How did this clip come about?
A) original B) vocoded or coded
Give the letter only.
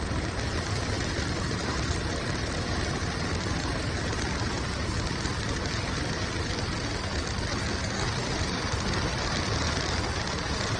B